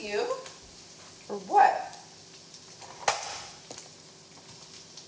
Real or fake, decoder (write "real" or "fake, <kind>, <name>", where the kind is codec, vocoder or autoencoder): real